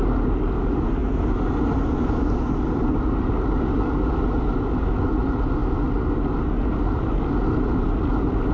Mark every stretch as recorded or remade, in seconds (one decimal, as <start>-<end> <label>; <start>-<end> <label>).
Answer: 0.0-8.5 recorded